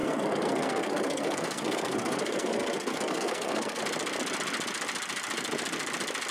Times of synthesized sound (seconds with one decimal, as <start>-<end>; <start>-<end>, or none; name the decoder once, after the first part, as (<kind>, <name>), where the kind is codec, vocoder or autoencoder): 0.0-3.8 (codec, SNAC)